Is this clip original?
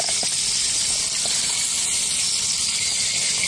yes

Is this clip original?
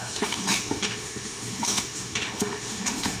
no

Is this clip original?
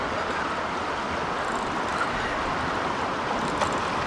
yes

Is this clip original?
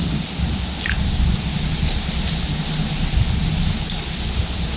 yes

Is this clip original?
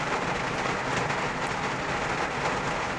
yes